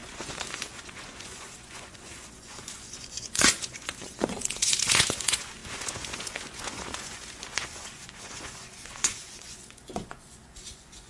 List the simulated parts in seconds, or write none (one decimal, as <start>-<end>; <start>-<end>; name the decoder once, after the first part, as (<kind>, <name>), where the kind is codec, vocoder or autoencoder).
0.0-11.1 (vocoder, Vocos)